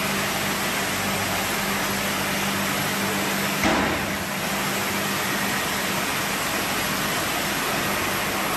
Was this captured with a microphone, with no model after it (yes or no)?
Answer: yes